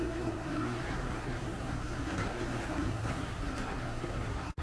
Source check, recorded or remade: remade